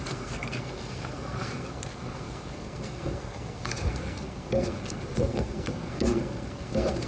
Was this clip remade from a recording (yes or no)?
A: yes